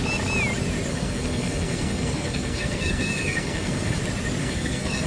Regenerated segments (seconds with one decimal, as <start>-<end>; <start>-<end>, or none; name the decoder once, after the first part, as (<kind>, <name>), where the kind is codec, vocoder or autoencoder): 0.9-4.0 (codec, SNAC); 4.4-5.1